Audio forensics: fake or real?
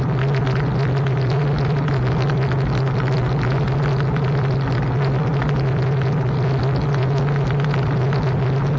real